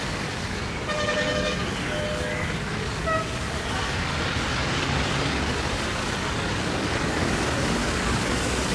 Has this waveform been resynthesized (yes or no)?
yes